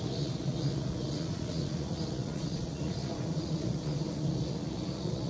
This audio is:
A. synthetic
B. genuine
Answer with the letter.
A